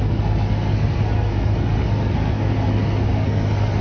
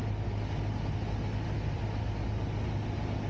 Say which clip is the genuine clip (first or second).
second